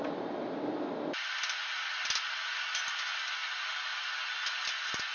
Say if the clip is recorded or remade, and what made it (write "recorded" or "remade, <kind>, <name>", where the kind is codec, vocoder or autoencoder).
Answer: recorded